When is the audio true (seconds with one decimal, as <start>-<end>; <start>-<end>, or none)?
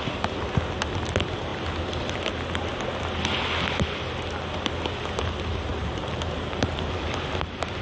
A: 0.0-5.7; 6.9-7.8